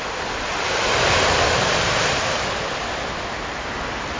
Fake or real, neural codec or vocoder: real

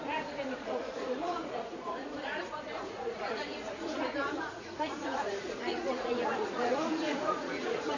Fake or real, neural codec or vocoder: fake, vocoder, Vocos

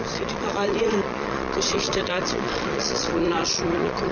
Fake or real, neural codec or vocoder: fake, vocoder, Vocos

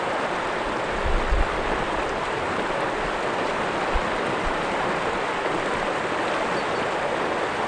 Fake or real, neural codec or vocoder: real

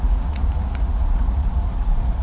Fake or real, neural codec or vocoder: fake, vocoder, Vocos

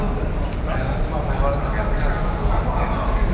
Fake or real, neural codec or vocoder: real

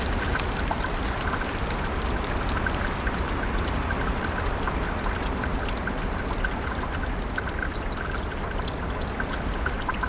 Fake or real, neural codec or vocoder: real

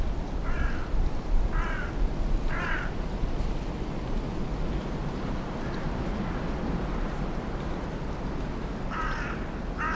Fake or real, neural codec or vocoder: real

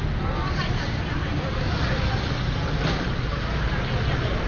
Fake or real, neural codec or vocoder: real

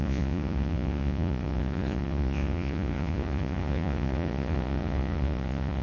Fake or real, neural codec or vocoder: fake, vocoder, Vocos